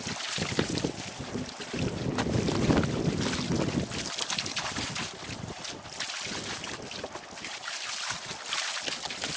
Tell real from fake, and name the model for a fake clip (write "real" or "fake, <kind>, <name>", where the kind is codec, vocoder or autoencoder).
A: real